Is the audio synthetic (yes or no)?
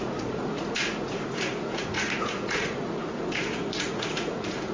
yes